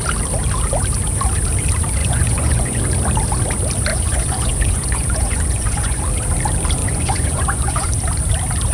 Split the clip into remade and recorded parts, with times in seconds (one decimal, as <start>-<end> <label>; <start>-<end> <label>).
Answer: 0.0-2.0 recorded; 2.0-2.8 remade; 2.8-3.9 recorded; 3.9-6.0 remade; 6.0-6.8 recorded; 6.8-7.9 remade; 7.9-8.7 recorded